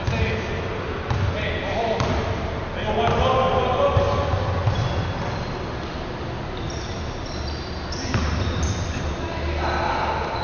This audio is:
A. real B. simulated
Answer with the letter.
A